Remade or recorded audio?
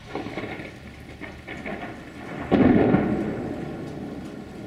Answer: recorded